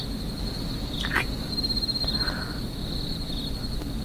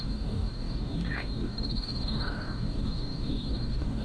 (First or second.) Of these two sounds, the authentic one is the first